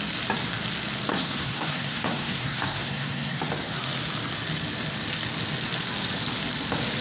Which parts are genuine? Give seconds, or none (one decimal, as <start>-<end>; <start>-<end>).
0.0-1.1; 3.4-7.0

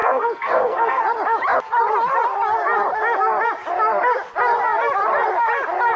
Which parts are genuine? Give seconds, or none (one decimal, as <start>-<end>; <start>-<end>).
1.0-6.0

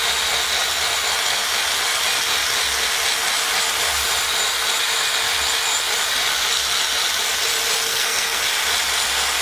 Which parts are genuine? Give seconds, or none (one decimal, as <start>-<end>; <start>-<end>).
0.0-7.9; 8.4-9.4

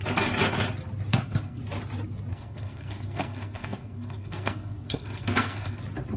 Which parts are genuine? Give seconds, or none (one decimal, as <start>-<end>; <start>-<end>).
0.0-1.1; 1.6-2.3; 5.8-6.2

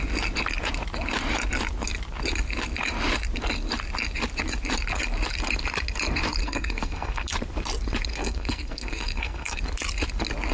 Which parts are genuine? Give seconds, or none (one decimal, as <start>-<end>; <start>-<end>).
0.0-6.4; 7.3-8.1; 9.6-10.5

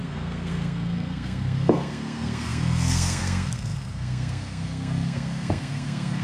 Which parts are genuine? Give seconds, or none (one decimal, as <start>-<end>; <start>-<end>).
none

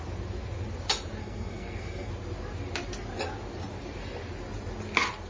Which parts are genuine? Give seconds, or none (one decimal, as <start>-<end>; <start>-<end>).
0.0-1.2; 2.1-5.3

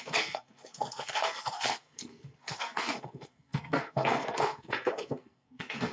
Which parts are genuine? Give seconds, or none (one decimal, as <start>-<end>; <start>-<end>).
none